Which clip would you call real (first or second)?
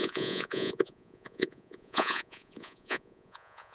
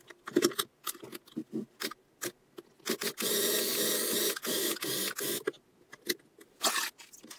second